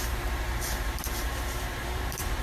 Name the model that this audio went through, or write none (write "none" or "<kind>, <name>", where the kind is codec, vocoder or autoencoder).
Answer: vocoder, BigVGAN v2